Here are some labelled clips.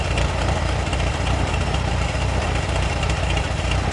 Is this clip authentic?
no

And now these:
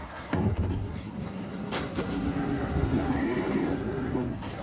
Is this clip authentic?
no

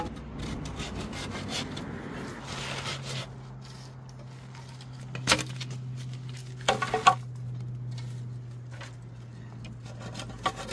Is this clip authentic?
yes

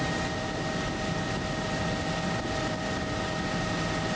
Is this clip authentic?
yes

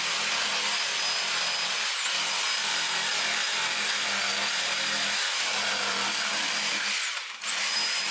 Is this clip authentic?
yes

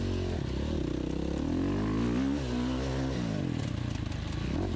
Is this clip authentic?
yes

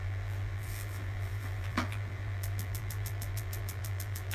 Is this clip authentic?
no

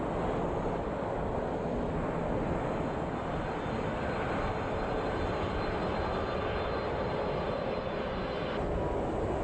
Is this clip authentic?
yes